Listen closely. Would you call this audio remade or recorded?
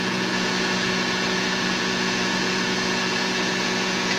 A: remade